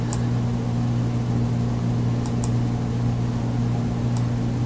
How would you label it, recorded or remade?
recorded